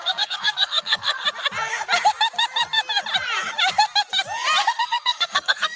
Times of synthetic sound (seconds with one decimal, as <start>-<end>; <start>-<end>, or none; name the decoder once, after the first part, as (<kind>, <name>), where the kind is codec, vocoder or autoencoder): 0.0-1.2 (codec, SNAC); 4.7-5.8